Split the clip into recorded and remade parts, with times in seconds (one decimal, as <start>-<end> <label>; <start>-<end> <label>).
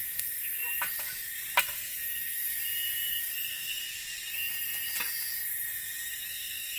0.0-0.6 remade; 0.6-1.6 recorded; 1.6-2.5 remade; 2.5-3.1 recorded; 3.1-3.8 remade; 3.8-6.3 recorded; 6.3-6.8 remade